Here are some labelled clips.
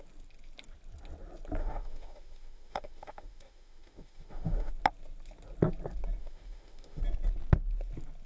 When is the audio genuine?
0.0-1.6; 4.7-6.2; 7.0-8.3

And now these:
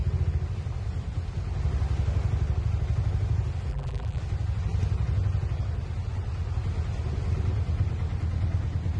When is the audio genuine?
0.0-3.7; 4.2-9.0

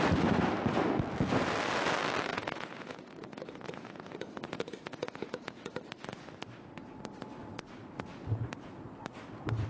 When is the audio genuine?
0.0-2.3; 5.7-9.7

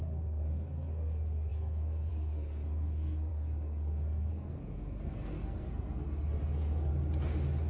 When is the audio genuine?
6.9-7.7

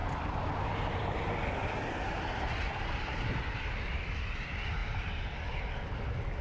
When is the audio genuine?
3.8-4.8; 5.6-6.4

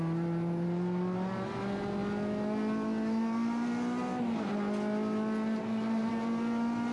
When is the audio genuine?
0.0-6.9